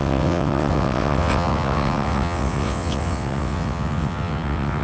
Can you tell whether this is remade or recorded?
remade